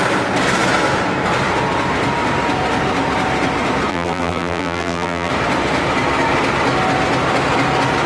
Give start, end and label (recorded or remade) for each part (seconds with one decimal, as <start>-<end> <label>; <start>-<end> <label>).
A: 0.0-3.9 recorded; 3.9-5.3 remade; 5.3-8.1 recorded